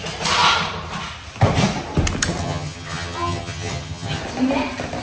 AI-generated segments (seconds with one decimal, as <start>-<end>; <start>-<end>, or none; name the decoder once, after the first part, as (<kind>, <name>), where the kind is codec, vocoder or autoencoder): 2.4-4.2 (vocoder, HiFi-GAN)